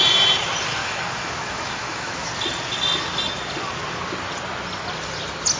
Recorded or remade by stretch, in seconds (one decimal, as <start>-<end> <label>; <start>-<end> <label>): 0.0-0.8 recorded; 0.8-2.3 remade; 2.3-5.6 recorded